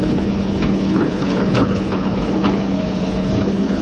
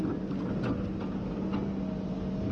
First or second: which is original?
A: second